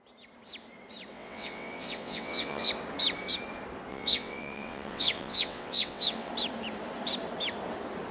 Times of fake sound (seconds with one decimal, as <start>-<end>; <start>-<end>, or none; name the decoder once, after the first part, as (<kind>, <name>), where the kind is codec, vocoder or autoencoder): 1.1-2.7 (vocoder, WaveNeXt); 3.9-6.3